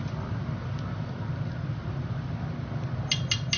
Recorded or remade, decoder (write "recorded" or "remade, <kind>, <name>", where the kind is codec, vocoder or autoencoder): recorded